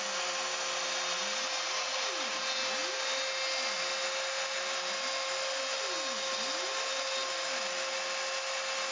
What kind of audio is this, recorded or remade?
recorded